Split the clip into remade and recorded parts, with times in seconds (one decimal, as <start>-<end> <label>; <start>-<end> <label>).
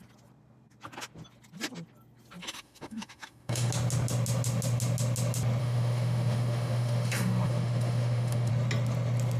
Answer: 0.0-2.4 recorded; 2.4-3.7 remade; 3.7-5.6 recorded; 5.6-8.5 remade; 8.5-9.4 recorded